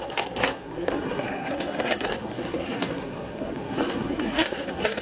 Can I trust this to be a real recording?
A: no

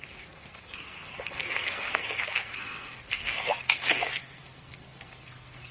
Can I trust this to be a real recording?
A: no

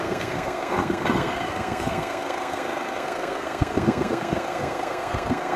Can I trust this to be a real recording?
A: no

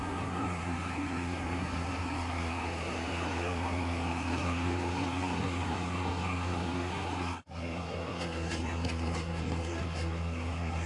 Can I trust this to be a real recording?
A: no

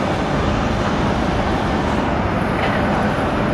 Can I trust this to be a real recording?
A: yes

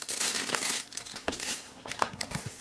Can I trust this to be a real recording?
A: no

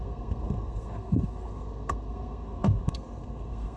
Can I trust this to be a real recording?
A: no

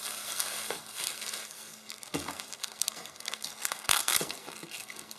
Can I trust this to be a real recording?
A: no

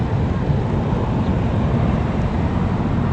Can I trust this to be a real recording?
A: yes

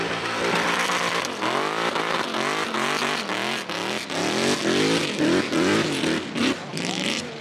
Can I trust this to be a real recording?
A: yes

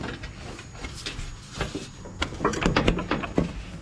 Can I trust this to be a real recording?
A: yes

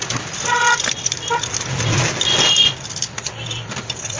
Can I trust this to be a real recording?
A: yes